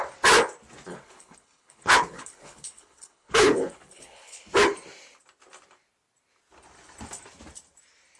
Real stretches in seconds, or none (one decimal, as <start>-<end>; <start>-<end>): 0.0-0.9; 4.5-8.2